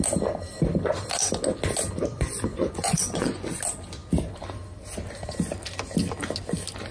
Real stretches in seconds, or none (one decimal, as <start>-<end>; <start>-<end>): 0.0-2.1; 3.6-6.9